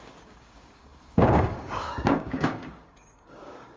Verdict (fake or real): fake